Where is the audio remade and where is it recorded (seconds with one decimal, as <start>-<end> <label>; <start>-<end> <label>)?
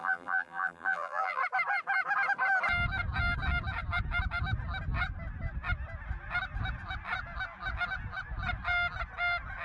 0.0-1.4 remade; 1.4-9.6 recorded